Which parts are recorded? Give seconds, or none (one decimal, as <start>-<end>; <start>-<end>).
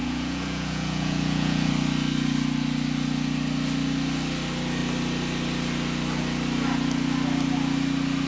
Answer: 1.7-8.3